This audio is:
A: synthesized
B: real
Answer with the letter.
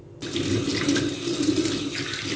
B